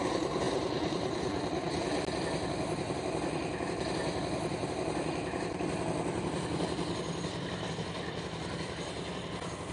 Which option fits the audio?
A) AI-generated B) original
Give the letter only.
B